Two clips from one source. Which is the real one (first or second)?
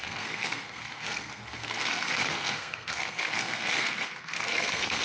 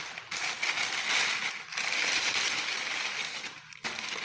second